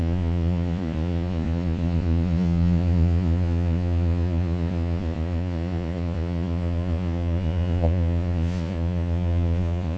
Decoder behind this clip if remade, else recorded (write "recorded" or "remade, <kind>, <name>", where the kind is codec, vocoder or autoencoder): remade, vocoder, Vocos